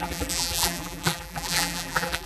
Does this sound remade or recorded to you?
remade